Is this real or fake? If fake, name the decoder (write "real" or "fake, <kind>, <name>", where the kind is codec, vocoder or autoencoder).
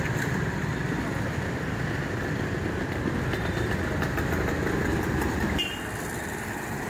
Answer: real